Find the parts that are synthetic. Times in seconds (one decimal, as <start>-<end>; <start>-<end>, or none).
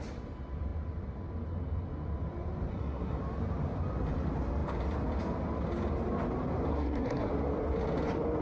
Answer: 2.7-3.2; 6.7-7.3